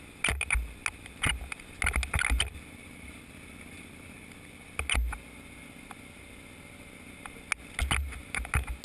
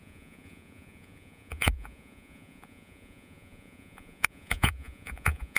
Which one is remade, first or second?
second